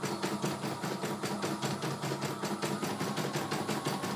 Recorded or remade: recorded